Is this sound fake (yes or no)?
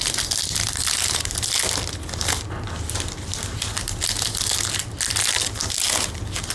no